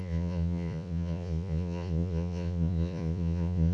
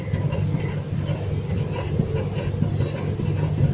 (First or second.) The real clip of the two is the second